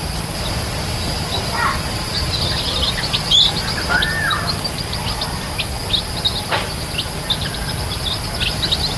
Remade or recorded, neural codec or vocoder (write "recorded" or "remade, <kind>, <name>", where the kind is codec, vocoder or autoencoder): recorded